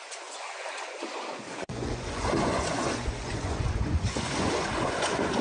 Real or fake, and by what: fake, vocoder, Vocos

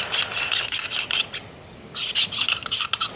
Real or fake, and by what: real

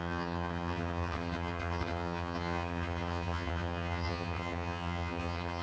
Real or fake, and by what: fake, vocoder, HiFi-GAN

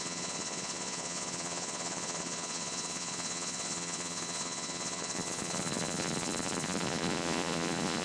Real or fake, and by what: fake, vocoder, Vocos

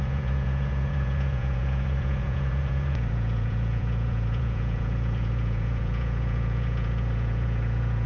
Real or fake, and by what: fake, vocoder, Vocos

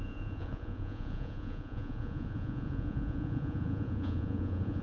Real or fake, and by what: fake, vocoder, Vocos